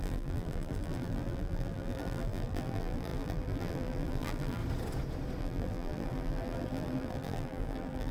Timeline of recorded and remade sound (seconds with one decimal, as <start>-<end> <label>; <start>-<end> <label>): 0.0-4.6 remade; 4.6-5.4 recorded; 5.4-8.1 remade